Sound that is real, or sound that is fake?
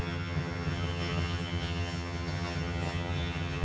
fake